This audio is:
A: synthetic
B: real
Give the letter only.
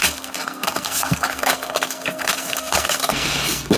A